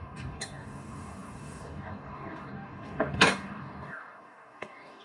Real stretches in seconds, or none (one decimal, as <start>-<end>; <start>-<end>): none